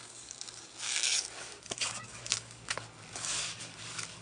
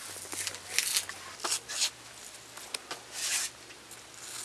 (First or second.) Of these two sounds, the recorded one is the second